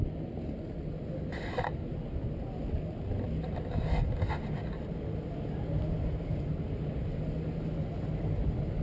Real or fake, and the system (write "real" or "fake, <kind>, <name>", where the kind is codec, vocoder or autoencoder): real